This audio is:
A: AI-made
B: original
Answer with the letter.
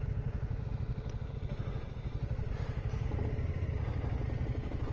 B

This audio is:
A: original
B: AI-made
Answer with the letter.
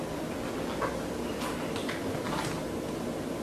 A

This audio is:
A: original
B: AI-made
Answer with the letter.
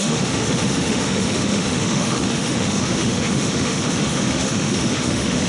B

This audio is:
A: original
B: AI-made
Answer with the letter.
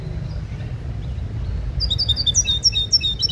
A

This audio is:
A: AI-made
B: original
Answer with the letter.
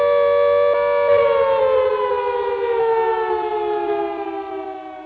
B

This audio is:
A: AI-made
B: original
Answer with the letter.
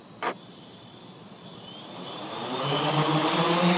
B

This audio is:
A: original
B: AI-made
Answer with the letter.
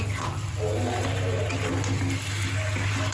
A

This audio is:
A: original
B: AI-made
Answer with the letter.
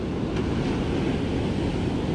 A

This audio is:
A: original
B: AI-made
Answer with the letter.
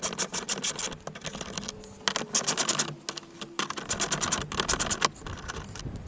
A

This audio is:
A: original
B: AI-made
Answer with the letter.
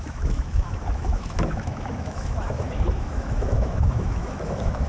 B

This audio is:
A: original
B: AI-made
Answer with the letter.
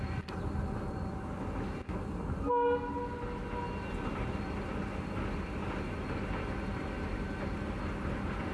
A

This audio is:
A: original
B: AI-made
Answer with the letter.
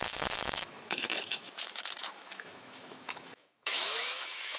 B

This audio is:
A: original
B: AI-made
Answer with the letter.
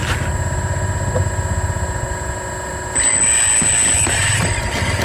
A